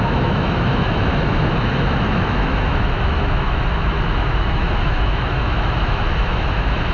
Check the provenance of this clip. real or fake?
fake